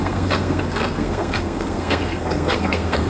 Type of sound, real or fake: fake